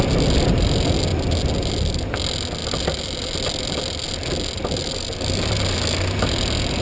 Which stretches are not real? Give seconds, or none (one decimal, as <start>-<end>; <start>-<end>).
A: none